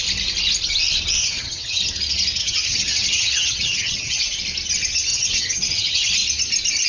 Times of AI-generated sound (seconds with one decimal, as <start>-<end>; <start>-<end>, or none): 1.2-1.8; 2.4-4.2; 5.1-6.1